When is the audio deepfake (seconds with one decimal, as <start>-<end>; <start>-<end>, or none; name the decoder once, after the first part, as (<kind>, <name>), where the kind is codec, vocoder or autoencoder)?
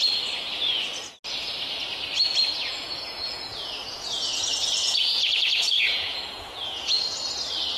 2.6-7.0 (vocoder, Vocos)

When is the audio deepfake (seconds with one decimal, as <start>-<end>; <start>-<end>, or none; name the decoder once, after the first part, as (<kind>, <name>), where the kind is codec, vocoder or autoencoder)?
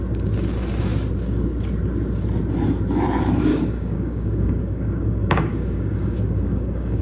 3.5-7.0 (codec, DAC)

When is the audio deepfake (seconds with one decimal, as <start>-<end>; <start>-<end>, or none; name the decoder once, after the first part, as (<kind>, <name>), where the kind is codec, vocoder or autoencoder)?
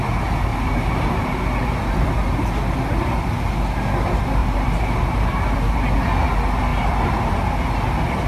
0.5-2.1 (vocoder, BigVGAN v2); 4.4-5.8